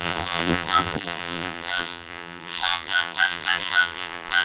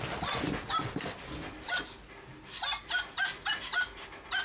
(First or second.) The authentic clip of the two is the second